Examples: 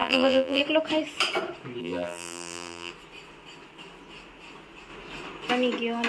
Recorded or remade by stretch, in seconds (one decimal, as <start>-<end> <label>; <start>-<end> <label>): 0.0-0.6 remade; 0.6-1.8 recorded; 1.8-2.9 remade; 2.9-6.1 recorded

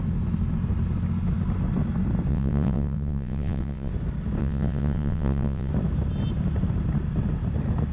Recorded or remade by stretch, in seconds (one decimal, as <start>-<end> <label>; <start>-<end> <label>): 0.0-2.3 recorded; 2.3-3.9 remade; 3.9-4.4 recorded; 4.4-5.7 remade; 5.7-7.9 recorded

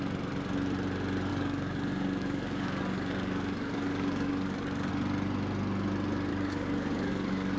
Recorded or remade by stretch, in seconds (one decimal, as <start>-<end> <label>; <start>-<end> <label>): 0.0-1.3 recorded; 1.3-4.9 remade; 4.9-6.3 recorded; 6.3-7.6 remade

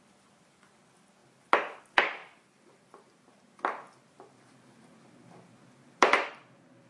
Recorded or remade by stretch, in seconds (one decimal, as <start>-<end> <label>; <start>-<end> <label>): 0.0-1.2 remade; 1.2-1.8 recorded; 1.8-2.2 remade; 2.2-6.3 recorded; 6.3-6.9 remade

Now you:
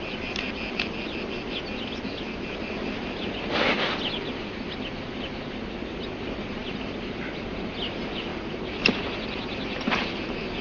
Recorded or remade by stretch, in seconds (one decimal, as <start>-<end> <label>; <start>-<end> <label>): 0.0-10.6 recorded

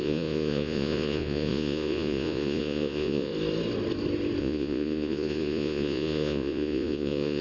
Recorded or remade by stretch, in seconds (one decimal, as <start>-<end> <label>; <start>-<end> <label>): 0.0-3.3 remade; 3.3-4.4 recorded; 4.4-7.4 remade

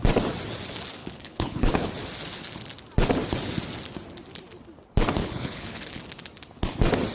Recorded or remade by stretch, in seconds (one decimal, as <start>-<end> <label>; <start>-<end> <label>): 0.0-1.0 recorded; 1.0-1.9 remade; 1.9-5.2 recorded; 5.2-6.0 remade; 6.0-7.1 recorded